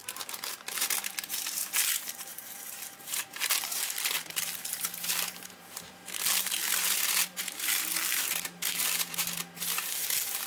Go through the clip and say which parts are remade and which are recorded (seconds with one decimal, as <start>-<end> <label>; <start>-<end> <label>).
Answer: 0.0-10.5 remade